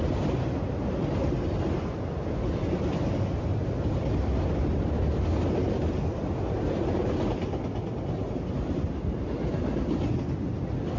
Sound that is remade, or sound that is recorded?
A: recorded